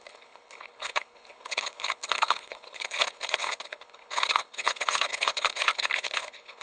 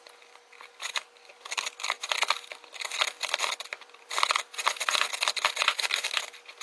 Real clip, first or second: second